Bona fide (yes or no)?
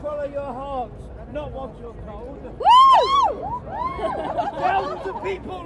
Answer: yes